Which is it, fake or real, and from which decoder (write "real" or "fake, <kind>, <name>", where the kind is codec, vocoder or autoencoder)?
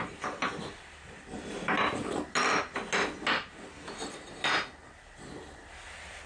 real